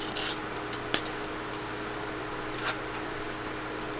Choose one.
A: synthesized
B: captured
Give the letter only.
B